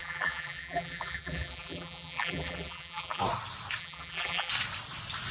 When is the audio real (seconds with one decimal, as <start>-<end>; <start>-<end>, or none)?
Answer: 3.2-3.8; 4.5-5.3

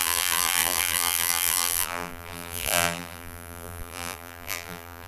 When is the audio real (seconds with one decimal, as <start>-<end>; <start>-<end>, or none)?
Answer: none

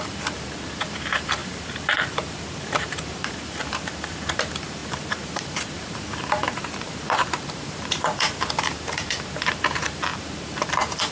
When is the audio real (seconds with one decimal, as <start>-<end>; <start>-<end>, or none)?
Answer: none

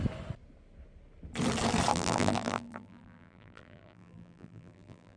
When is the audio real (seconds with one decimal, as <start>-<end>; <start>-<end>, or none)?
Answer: 0.0-1.9

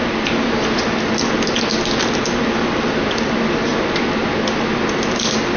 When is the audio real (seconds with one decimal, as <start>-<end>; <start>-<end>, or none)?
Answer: 0.0-5.6

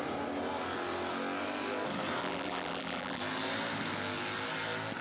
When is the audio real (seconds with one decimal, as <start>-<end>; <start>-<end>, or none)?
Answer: 0.0-2.2; 3.2-5.0

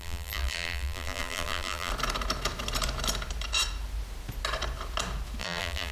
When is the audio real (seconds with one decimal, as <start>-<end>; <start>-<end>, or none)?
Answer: 1.9-5.4